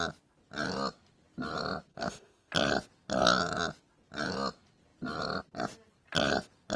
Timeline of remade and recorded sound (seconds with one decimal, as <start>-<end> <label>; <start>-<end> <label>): 0.0-1.9 recorded; 1.9-2.5 remade; 2.5-6.8 recorded